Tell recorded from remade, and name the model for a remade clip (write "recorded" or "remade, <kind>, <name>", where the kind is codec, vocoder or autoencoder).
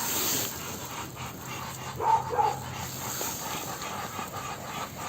recorded